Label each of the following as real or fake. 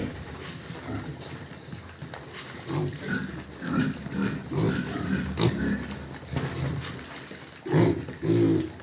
real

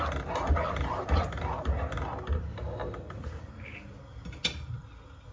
real